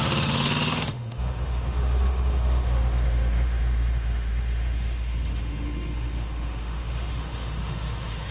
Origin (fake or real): fake